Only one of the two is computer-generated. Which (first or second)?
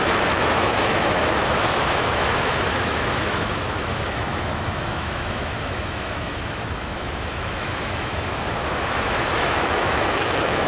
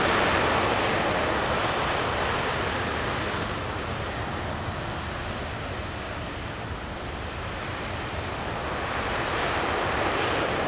first